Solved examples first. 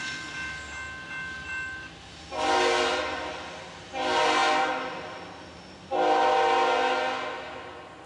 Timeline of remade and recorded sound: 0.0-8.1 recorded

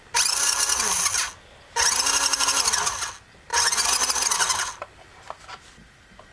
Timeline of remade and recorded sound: 0.0-6.3 recorded

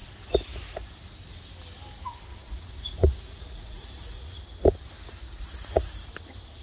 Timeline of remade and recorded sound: 0.0-2.3 recorded; 2.3-4.4 remade; 4.4-5.2 recorded; 5.2-5.9 remade; 5.9-6.6 recorded

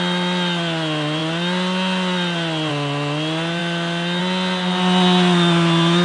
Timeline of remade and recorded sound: 0.0-6.0 recorded

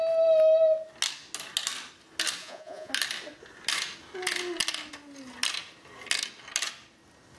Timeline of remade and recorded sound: 0.0-2.4 recorded; 2.4-2.9 remade; 2.9-7.4 recorded

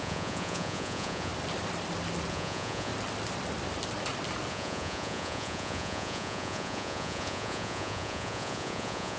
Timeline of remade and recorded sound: 0.0-1.3 remade; 1.3-2.3 recorded; 2.3-2.9 remade; 2.9-4.5 recorded; 4.5-9.2 remade